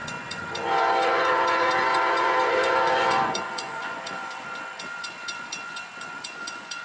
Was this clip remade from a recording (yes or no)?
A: yes